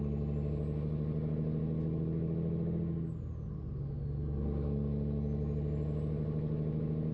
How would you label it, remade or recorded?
recorded